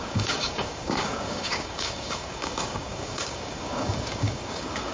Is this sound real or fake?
fake